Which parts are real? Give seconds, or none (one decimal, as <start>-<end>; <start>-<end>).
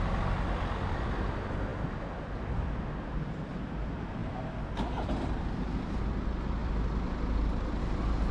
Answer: 0.0-8.3